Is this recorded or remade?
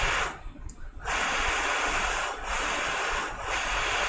recorded